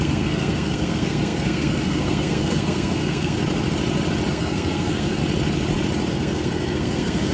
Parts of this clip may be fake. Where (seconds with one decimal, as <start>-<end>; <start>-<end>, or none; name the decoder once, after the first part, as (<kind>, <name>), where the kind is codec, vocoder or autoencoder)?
0.0-3.4 (codec, SNAC); 4.3-5.2; 6.1-7.3